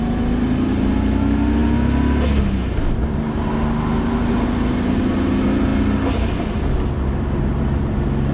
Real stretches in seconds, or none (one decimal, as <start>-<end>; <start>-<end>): 0.0-8.3